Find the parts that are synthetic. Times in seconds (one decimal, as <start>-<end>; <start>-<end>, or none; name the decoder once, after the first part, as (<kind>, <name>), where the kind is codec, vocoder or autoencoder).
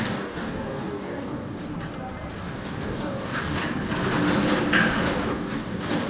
0.0-1.6 (codec, DAC); 2.4-3.6; 5.3-6.1